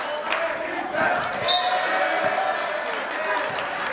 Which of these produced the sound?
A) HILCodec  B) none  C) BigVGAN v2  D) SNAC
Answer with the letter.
B